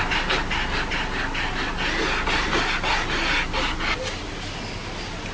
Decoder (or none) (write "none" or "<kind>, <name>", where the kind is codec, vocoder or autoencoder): none